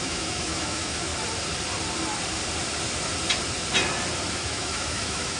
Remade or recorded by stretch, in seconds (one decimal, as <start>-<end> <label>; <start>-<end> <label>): 0.0-1.1 remade; 1.1-4.3 recorded; 4.3-5.4 remade